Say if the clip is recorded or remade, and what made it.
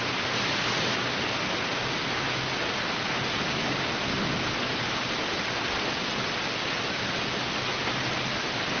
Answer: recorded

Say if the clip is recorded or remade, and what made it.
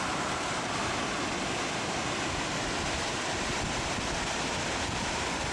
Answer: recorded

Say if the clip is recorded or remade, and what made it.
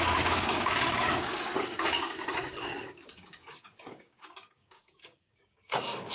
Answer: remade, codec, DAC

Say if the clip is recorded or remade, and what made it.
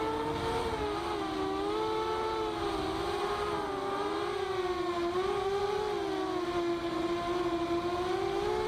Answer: recorded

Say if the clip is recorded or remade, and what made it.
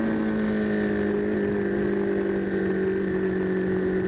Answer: recorded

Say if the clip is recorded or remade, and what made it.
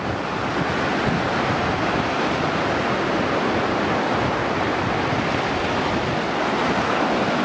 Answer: recorded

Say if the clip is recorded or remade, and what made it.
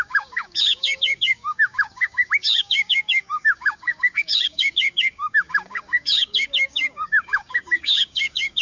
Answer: remade, codec, DAC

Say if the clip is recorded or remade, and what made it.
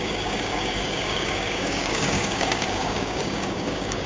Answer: remade, codec, DAC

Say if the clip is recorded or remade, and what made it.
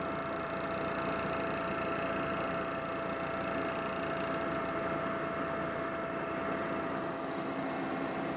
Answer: recorded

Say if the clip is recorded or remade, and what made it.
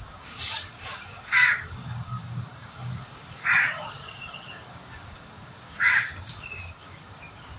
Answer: remade, codec, DAC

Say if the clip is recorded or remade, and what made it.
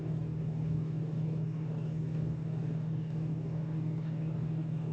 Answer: remade, codec, DAC